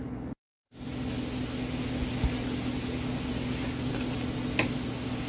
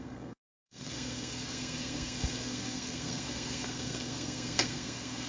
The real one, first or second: first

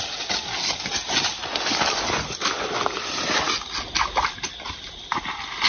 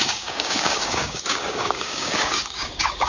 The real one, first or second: first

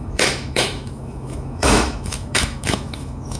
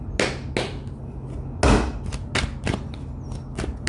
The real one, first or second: second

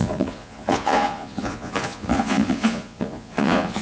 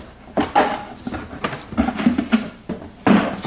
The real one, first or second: second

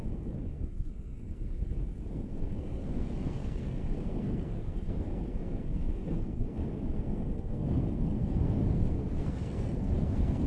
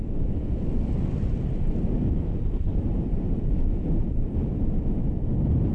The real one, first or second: second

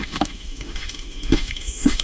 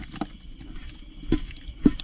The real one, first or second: second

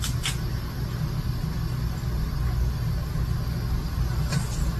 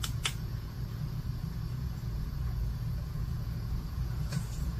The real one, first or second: first